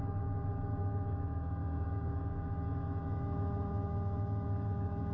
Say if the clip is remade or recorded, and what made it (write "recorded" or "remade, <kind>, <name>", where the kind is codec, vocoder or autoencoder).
remade, autoencoder, DAC-VAE